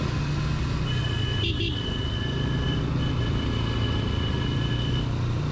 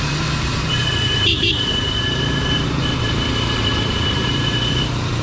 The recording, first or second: first